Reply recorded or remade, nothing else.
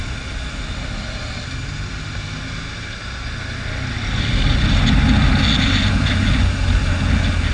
recorded